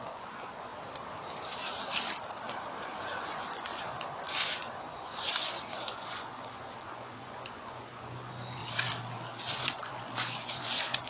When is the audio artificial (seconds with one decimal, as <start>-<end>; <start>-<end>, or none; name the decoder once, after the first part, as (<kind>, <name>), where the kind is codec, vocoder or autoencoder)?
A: 0.0-0.7 (vocoder, Vocos); 2.8-8.6; 9.5-11.1